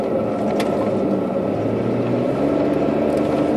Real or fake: real